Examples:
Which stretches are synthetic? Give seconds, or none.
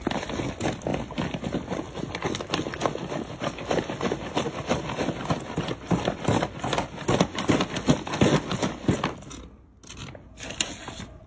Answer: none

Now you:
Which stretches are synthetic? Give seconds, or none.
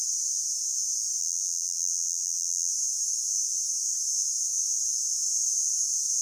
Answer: 1.2-2.7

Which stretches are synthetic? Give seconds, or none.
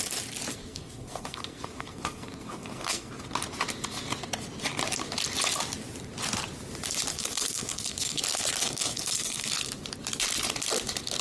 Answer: 0.5-3.1; 7.1-8.2; 8.6-9.7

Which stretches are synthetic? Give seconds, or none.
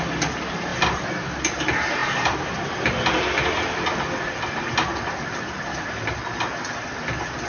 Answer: none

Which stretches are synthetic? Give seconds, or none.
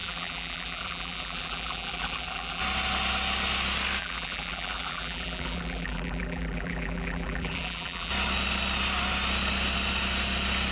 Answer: 0.0-2.6; 4.0-8.1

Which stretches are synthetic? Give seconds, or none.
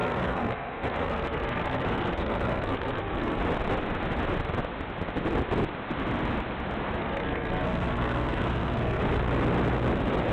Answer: 0.0-3.4; 7.0-9.0